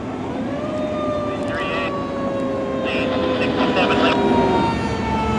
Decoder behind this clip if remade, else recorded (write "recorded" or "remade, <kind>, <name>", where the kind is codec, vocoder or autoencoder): recorded